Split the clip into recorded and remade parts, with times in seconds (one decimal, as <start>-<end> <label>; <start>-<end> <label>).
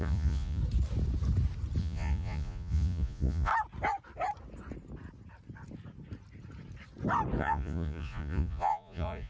0.0-0.6 remade; 0.6-1.8 recorded; 1.8-3.5 remade; 3.5-7.4 recorded; 7.4-9.3 remade